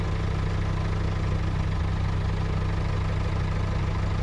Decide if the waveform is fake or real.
real